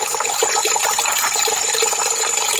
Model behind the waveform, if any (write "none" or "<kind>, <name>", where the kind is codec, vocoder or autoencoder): vocoder, BigVGAN v2